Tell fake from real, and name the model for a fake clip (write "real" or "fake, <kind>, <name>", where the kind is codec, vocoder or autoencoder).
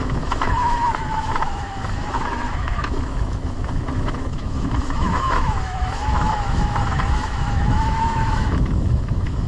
fake, autoencoder, DAC-VAE